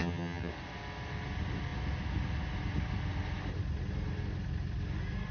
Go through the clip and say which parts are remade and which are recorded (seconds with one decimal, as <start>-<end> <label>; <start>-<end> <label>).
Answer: 0.0-0.5 remade; 0.5-5.3 recorded